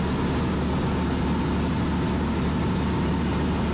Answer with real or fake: real